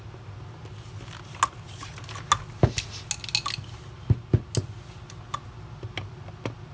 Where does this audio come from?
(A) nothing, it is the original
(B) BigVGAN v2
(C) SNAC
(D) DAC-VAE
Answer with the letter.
A